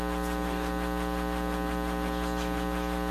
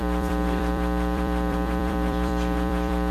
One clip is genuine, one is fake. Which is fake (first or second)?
second